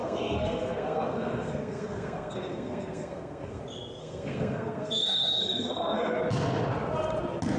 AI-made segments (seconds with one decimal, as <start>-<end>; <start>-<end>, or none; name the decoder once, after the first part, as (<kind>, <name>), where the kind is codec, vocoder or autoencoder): 0.0-3.6 (codec, SNAC); 4.0-6.2